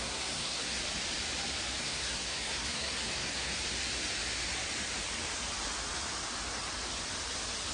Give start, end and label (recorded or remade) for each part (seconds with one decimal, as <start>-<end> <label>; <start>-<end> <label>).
0.0-0.8 remade; 0.8-1.8 recorded; 1.8-3.5 remade; 3.5-7.7 recorded